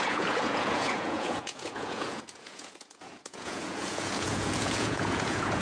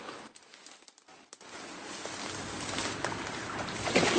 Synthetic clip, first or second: first